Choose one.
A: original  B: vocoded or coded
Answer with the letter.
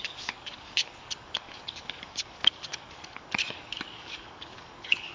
B